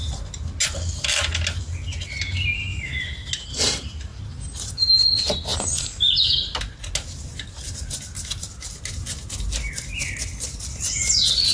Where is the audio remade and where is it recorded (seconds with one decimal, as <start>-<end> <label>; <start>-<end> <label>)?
0.0-2.7 recorded; 2.7-3.3 remade; 3.3-11.5 recorded